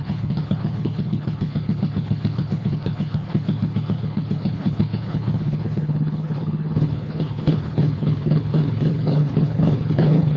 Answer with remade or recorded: remade